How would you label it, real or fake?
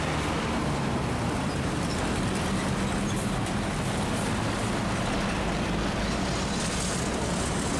real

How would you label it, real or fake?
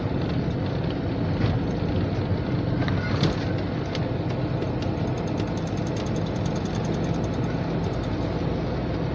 real